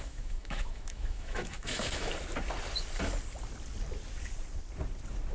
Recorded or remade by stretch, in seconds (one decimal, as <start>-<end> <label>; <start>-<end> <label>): 0.0-2.1 remade; 2.1-5.3 recorded